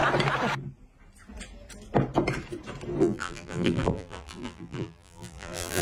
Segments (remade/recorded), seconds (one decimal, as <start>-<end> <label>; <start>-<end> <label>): 0.0-3.0 recorded; 3.0-5.8 remade